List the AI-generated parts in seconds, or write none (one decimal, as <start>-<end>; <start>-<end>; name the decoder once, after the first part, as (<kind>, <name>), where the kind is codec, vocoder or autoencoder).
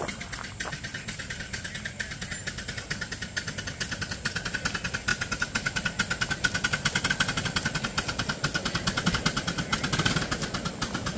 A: none